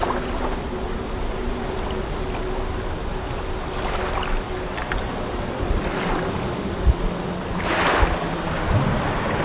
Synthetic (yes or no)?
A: no